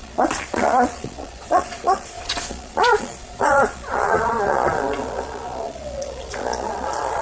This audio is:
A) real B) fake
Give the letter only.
B